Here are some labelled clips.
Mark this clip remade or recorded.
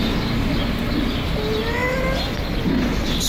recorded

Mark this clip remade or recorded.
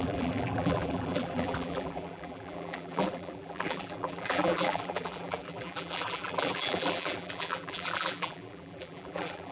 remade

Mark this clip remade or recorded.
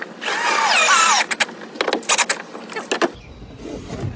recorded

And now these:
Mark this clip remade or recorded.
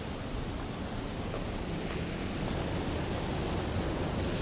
recorded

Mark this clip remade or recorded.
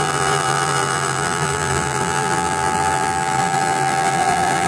remade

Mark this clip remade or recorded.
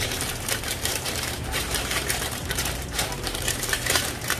remade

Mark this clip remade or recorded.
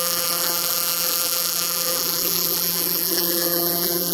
remade